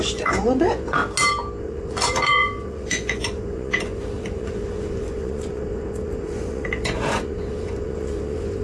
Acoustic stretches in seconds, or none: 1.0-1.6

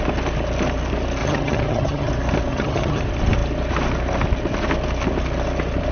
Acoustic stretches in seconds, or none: 0.0-1.2; 2.1-2.5; 3.0-5.9

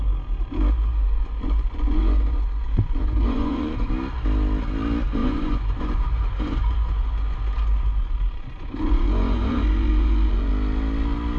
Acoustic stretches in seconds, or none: 0.0-0.9; 3.9-5.2; 10.5-11.4

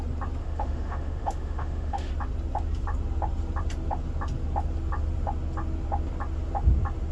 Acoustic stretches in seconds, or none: 0.0-0.4; 2.1-7.1